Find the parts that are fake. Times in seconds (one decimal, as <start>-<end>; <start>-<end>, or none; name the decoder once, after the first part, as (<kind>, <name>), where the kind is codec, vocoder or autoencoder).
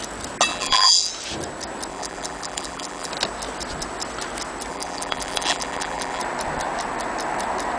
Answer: 0.5-1.1 (vocoder, BigVGAN v2); 1.9-3.1; 4.7-6.2